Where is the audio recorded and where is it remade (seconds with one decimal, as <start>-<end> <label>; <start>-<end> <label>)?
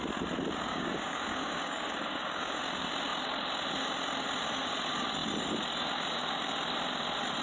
0.0-0.7 recorded; 0.7-2.6 remade; 2.6-7.4 recorded